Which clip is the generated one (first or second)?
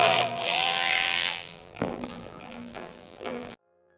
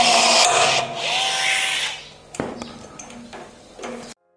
first